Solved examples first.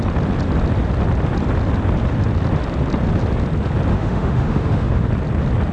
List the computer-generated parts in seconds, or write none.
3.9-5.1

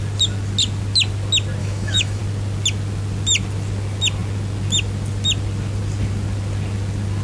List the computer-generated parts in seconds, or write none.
1.6-2.2

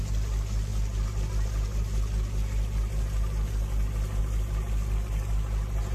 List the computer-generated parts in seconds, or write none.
none

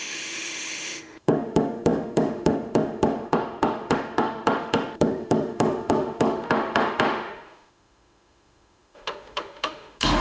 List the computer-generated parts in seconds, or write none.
0.0-10.2

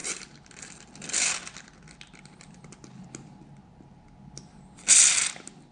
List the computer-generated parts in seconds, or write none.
none

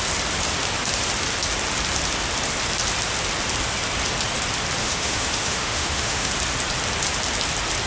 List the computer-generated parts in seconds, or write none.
4.8-6.3

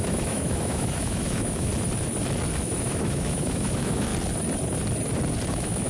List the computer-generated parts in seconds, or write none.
0.0-1.7; 2.6-4.1; 5.5-5.9